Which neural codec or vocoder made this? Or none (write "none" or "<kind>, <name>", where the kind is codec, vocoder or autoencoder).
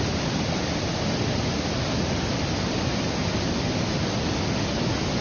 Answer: none